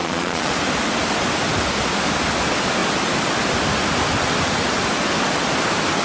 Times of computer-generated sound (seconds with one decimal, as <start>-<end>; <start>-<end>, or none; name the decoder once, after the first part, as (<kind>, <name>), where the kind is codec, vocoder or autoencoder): 0.0-0.5 (vocoder, Vocos)